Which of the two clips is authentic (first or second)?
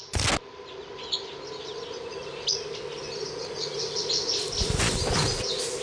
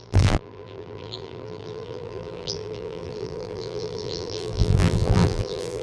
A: first